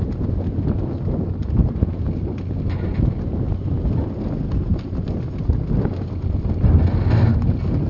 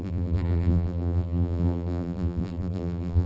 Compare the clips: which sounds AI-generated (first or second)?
second